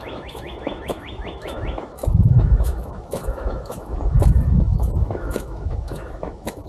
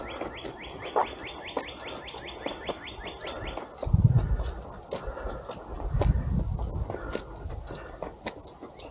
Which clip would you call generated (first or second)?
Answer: first